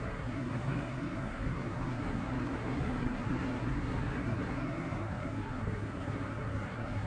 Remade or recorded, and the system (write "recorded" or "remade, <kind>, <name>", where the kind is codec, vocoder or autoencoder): remade, codec, SNAC